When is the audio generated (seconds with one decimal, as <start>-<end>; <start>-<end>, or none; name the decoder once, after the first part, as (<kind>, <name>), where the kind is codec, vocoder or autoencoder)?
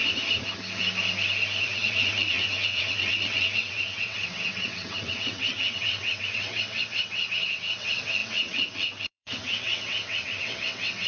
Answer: 1.6-11.1 (vocoder, WaveNeXt)